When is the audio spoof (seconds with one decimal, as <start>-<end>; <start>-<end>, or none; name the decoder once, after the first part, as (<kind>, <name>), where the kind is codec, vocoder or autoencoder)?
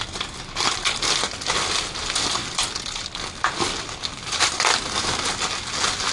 none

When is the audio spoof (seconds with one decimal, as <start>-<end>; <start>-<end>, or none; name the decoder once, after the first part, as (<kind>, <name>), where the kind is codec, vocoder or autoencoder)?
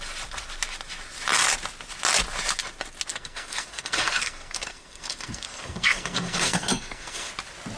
3.1-7.3 (codec, SNAC)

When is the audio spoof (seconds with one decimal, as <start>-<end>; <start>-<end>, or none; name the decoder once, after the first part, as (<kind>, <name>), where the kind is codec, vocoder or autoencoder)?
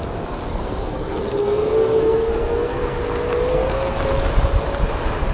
0.5-3.0 (codec, SNAC); 3.5-4.0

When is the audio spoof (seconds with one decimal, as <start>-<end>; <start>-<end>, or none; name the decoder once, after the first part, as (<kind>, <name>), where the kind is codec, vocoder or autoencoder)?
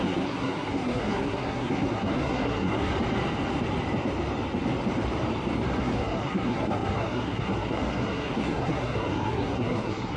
0.0-2.9 (codec, SNAC); 5.8-10.2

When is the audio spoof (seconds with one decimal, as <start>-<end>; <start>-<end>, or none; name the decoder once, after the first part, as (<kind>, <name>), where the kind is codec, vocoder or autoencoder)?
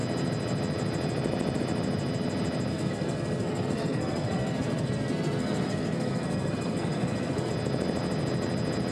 2.7-7.5 (codec, SNAC)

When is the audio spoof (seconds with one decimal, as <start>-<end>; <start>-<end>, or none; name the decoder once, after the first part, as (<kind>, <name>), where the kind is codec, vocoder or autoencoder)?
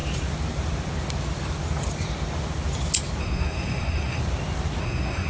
3.2-4.2 (codec, SNAC); 4.8-5.3